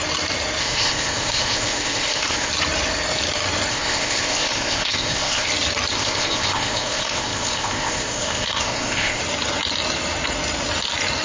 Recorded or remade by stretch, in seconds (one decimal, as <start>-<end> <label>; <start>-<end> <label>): 0.0-0.6 recorded; 0.6-2.5 remade; 2.5-3.7 recorded; 3.7-5.5 remade; 5.5-5.9 recorded; 5.9-9.2 remade; 9.2-11.2 recorded